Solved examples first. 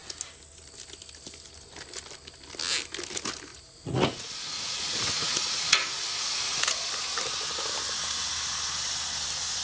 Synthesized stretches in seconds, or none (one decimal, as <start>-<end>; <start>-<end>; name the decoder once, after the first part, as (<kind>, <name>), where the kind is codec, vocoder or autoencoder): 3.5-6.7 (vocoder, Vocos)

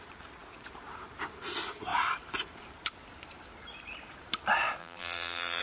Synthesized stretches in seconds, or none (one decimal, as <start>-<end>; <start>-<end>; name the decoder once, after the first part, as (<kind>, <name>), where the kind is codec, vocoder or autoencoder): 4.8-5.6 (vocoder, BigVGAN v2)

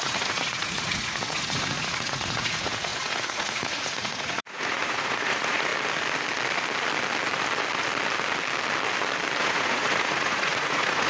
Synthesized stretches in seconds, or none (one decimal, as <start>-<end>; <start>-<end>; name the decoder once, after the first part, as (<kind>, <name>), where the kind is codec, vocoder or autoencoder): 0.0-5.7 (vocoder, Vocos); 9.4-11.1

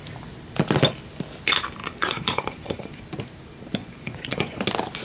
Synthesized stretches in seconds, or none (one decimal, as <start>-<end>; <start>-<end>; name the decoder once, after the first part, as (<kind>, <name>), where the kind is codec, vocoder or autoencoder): 1.8-3.0 (vocoder, Vocos); 3.8-4.6